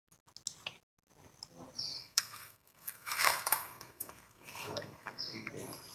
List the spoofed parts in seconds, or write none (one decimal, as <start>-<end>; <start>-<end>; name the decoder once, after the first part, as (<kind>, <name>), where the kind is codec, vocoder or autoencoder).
2.0-5.5 (codec, SNAC)